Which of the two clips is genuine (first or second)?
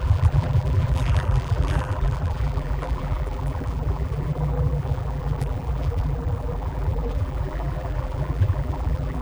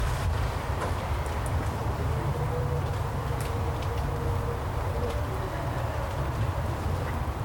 second